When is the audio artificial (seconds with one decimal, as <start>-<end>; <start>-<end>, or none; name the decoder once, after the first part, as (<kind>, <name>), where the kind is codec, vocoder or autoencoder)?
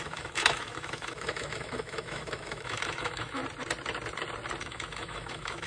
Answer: 0.0-3.4 (autoencoder, DAC-VAE); 4.6-5.7